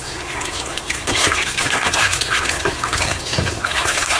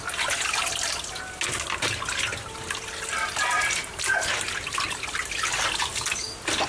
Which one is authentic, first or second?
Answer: second